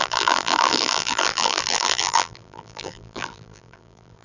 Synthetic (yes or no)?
yes